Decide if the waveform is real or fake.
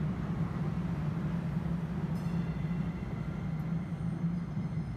real